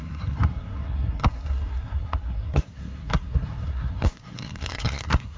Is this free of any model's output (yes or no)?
no